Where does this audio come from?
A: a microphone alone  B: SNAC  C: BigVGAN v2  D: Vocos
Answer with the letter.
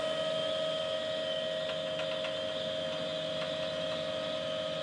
A